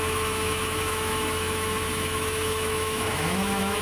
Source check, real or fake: fake